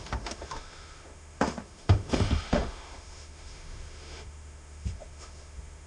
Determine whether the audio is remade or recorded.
remade